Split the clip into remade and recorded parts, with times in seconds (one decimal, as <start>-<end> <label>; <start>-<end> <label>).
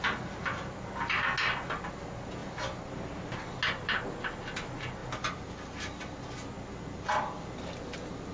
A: 0.0-8.3 recorded